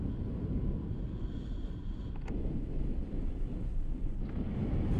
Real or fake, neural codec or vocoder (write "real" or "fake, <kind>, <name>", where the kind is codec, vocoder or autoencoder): real